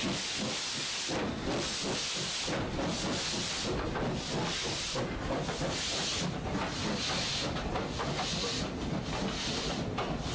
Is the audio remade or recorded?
recorded